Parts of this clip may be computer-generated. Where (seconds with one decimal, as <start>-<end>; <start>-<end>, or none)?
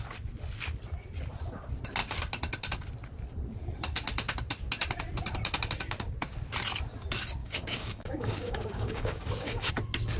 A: 7.4-9.7